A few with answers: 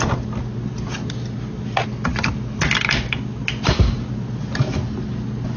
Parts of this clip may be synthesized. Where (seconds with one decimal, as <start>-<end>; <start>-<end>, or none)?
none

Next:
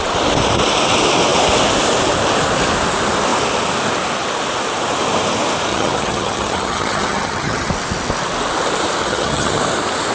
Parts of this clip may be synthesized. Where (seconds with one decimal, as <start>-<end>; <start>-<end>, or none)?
5.7-7.7; 9.0-9.6

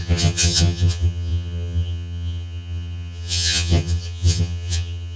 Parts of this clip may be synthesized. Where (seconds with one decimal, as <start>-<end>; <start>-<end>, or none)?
0.0-5.2

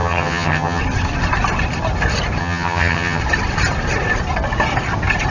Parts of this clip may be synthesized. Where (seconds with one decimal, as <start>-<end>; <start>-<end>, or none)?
0.0-0.8; 2.4-3.2

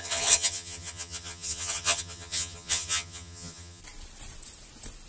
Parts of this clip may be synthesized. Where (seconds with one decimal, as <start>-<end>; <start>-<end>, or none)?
0.0-3.8

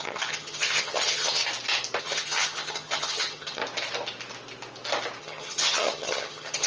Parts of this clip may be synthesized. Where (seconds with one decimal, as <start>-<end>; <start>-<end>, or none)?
0.0-1.4; 2.0-3.6; 5.2-6.7

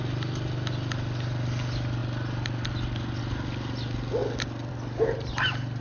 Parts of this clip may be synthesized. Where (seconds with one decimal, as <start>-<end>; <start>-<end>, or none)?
none

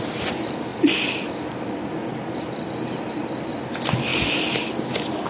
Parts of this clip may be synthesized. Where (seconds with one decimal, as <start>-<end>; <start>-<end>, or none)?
none